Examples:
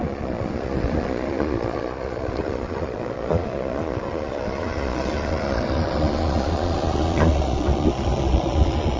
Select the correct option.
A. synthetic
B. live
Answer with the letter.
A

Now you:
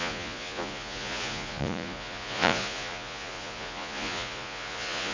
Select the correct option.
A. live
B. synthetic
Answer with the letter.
B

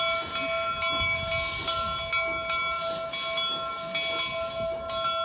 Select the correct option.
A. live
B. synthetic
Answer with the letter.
A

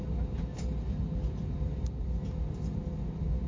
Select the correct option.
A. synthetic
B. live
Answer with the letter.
B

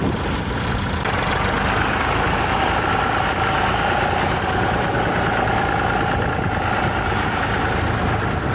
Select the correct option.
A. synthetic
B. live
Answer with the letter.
B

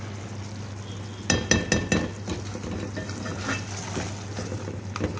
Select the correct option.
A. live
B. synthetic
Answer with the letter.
A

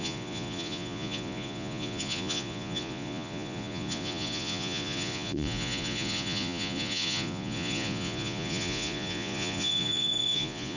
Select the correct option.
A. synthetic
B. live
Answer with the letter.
A